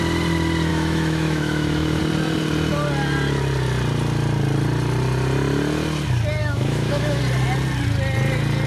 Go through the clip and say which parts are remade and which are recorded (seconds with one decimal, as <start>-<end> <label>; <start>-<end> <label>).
0.0-0.7 recorded; 0.7-2.0 remade; 2.0-6.4 recorded; 6.4-7.2 remade; 7.2-8.7 recorded